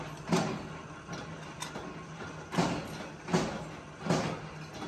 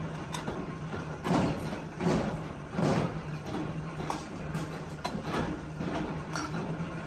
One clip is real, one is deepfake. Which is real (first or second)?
first